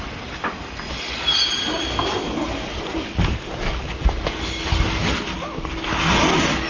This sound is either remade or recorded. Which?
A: recorded